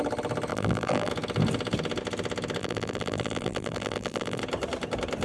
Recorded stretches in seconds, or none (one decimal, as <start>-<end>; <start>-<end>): 0.0-0.5; 1.1-2.6; 4.4-5.2

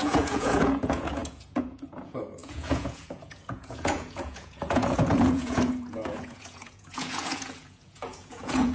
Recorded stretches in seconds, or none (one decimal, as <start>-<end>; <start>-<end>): none

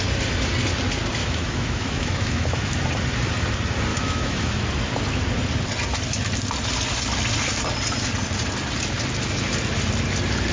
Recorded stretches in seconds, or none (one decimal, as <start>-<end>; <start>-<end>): 0.0-1.2; 2.8-3.9; 4.6-10.5

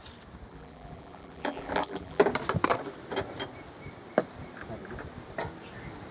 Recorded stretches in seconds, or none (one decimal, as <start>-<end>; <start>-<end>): 0.0-0.5; 2.2-6.1

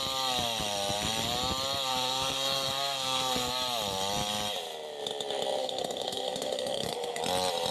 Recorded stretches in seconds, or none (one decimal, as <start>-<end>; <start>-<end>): 0.0-1.9; 3.5-5.6; 7.2-7.7

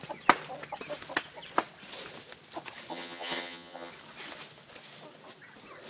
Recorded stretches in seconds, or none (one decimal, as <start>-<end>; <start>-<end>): 0.0-2.9; 3.9-5.9